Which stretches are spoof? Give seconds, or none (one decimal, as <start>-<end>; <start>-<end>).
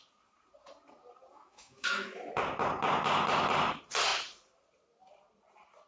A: 1.3-2.3